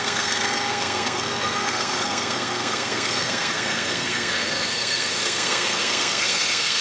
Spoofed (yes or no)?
yes